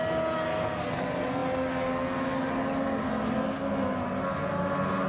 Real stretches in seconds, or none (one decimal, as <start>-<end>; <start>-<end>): 0.0-5.1